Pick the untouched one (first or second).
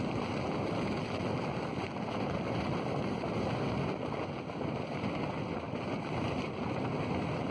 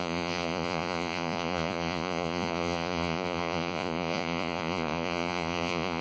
first